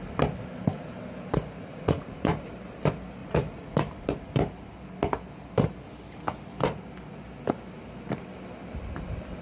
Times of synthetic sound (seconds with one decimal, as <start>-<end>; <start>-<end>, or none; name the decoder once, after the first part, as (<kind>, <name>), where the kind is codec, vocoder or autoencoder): 1.7-2.5 (vocoder, Vocos); 3.2-3.8